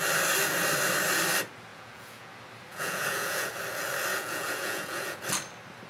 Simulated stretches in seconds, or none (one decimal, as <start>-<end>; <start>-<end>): 1.7-2.3; 2.7-3.5; 4.1-5.2

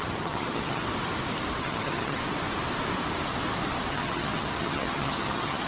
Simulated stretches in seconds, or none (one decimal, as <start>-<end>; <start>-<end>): 0.0-0.8; 1.6-2.2; 3.9-5.7